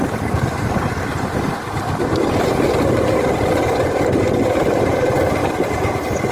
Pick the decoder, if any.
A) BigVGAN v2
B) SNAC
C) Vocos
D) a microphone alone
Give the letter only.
D